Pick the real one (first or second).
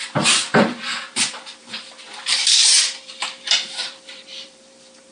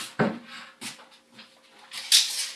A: second